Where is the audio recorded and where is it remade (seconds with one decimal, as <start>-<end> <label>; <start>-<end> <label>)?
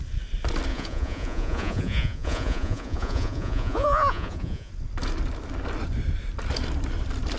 0.0-0.7 recorded; 0.7-4.7 remade; 4.7-7.4 recorded